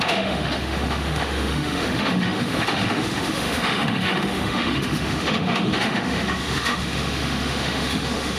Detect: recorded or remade remade